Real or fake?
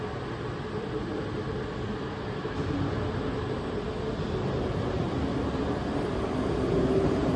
real